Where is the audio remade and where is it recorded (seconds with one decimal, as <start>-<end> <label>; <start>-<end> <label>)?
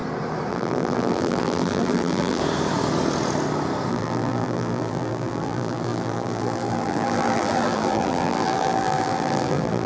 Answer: 0.0-0.5 recorded; 0.5-2.4 remade; 2.4-3.9 recorded; 3.9-9.9 remade